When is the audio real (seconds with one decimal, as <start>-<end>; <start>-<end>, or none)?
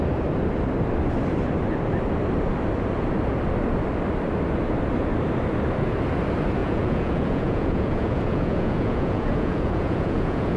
0.0-6.6